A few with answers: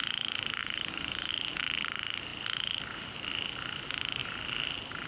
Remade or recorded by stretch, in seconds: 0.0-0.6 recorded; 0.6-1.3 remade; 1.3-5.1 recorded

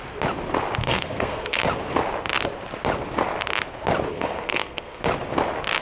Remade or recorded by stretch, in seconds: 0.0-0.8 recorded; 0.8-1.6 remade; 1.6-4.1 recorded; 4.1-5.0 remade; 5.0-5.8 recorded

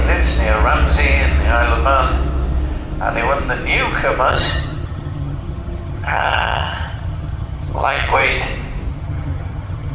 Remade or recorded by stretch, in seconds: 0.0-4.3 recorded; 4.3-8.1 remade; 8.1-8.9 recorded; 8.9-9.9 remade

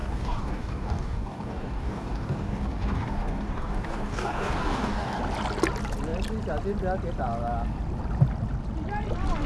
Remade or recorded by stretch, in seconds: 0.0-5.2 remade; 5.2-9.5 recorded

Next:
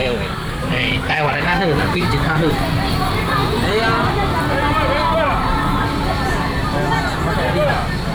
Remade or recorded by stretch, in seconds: 0.0-2.5 remade; 2.5-8.1 recorded

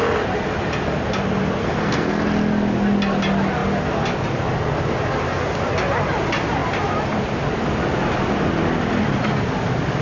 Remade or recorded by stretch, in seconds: 0.0-1.6 recorded; 1.6-2.2 remade; 2.2-10.0 recorded